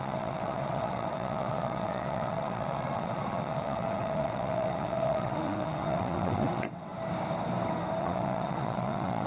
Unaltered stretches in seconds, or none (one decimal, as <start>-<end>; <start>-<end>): 6.9-8.0